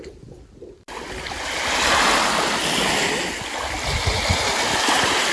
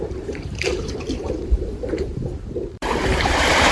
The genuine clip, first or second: first